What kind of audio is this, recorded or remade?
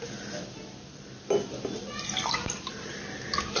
recorded